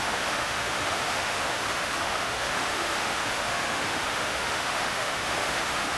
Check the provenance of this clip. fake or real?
fake